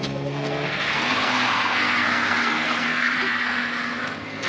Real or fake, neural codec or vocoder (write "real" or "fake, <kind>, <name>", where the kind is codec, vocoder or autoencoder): fake, codec, SNAC